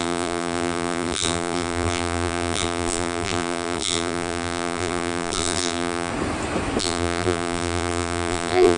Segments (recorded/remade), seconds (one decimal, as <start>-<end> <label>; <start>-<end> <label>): 0.0-6.1 remade; 6.1-6.8 recorded; 6.8-8.8 remade